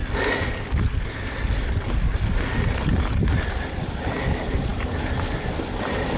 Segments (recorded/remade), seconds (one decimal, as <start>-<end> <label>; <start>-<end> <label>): 0.0-3.7 recorded; 3.7-4.7 remade; 4.7-6.2 recorded